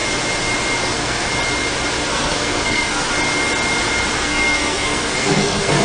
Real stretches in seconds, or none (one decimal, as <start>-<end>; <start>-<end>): 0.0-0.8; 1.3-2.1; 3.1-4.1